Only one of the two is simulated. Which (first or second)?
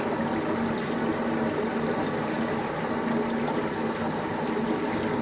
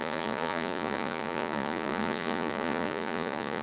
second